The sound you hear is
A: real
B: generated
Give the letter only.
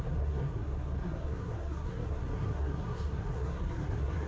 B